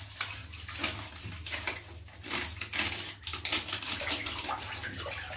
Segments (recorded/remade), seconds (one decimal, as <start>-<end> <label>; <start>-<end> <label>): 0.0-5.4 recorded